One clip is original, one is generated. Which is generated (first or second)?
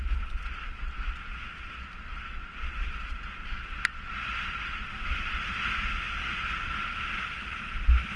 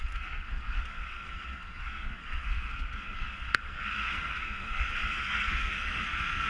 second